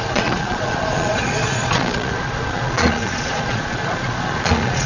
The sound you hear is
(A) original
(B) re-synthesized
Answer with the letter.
B